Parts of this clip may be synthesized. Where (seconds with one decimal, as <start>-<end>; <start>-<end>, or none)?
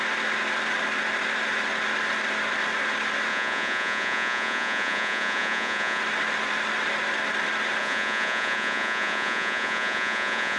3.3-6.0; 7.8-10.6